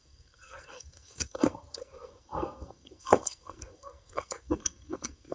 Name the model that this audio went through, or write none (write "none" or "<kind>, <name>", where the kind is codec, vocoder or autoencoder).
codec, SNAC